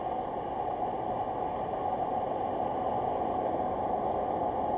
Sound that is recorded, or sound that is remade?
recorded